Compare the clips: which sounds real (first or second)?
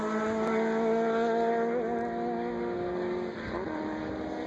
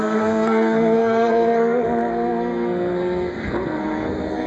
first